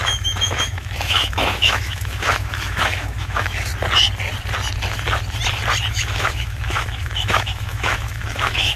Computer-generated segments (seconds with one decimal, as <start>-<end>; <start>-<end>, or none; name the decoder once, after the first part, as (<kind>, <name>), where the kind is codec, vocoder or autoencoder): 0.0-3.7 (autoencoder, DAC-VAE); 5.9-8.8